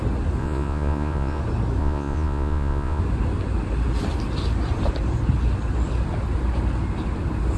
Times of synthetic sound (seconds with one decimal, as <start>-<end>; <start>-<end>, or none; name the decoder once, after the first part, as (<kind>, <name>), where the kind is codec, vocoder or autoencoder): 0.4-1.4 (vocoder, Vocos); 1.8-3.0